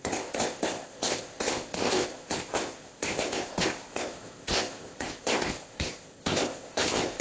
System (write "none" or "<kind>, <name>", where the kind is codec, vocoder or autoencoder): codec, ZipCodec